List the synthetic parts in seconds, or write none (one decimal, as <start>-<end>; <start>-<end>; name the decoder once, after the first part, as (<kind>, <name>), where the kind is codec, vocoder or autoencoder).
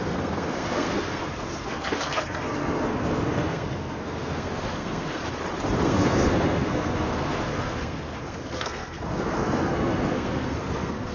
0.0-5.2 (codec, SNAC); 5.8-11.1